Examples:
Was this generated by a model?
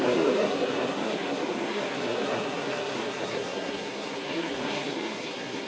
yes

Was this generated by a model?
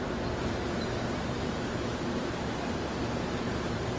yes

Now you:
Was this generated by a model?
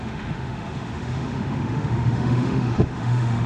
yes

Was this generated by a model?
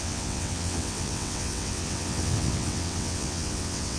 yes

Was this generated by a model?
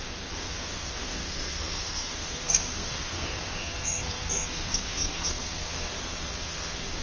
yes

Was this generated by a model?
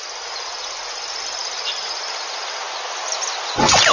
no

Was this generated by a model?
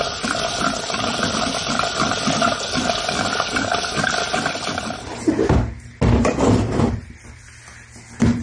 no